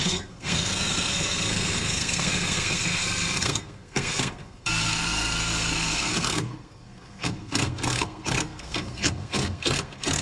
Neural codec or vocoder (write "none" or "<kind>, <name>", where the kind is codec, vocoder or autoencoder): codec, SNAC